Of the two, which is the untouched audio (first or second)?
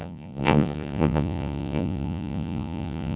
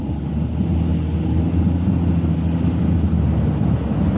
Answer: second